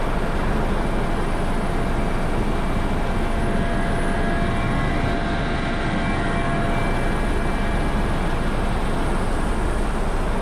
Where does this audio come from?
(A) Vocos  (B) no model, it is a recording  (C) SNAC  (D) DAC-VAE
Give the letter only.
B